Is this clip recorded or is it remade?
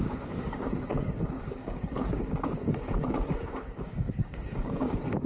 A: remade